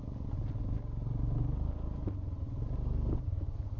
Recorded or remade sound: recorded